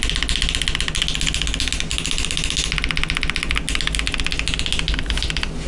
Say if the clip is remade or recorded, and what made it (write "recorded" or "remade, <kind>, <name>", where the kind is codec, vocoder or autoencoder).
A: recorded